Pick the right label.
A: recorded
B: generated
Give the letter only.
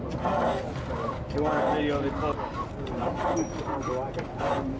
A